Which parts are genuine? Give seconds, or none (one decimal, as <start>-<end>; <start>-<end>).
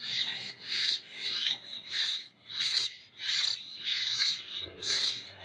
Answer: 3.0-3.6